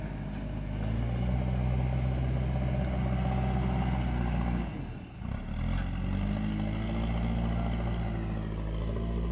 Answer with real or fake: real